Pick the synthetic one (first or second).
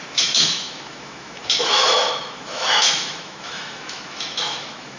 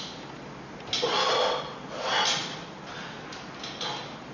first